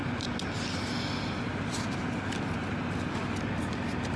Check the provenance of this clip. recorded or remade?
recorded